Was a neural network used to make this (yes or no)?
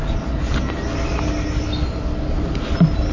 no